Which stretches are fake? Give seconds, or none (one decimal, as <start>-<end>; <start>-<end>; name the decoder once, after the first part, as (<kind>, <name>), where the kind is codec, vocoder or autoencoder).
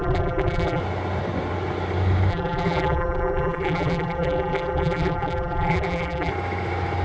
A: 0.0-0.8 (vocoder, BigVGAN v2); 2.3-6.3